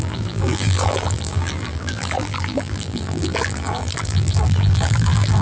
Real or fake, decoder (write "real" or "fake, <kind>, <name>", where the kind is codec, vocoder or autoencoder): fake, vocoder, BigVGAN v2